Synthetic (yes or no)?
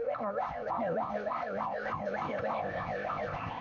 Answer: yes